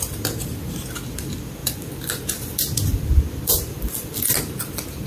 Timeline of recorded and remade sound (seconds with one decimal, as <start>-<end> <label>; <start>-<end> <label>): 0.0-1.6 recorded; 1.6-5.1 remade